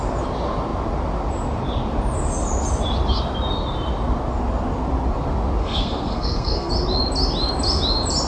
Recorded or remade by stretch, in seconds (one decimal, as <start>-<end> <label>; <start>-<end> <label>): 0.0-5.6 recorded; 5.6-6.7 remade; 6.7-8.3 recorded